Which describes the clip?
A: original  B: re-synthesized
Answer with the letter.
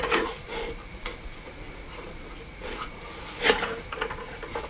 B